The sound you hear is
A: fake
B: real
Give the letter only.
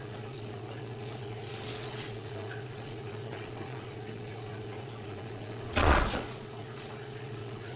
A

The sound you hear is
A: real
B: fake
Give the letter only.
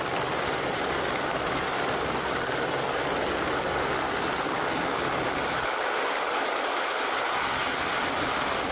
A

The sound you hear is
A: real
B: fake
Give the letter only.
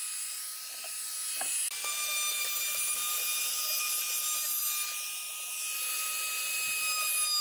A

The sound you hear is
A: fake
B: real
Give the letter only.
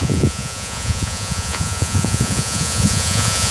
A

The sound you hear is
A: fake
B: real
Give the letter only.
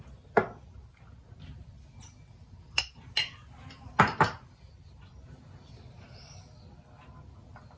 B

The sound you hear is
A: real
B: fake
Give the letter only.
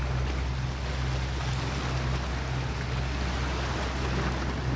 A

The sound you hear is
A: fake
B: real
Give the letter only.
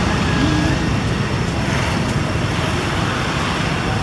B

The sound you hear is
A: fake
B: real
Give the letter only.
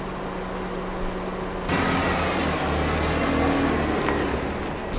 B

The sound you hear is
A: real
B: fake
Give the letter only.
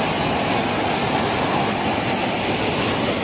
A